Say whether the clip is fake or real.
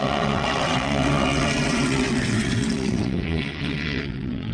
fake